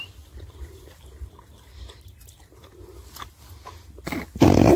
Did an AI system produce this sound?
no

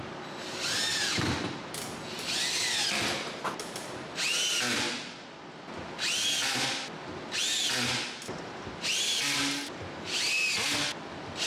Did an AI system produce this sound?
no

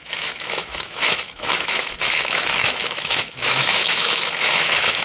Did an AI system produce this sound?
yes